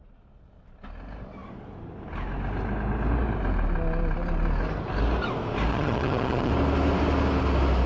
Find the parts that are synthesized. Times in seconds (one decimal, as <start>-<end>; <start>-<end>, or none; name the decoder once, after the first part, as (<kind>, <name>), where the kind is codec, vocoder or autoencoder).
5.7-6.5 (vocoder, HiFi-GAN)